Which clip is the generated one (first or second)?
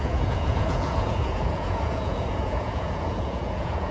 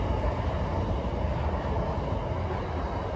first